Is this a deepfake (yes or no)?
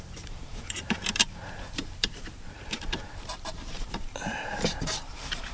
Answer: yes